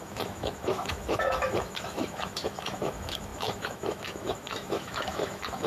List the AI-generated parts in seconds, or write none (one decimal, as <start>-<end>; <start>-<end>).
0.0-5.7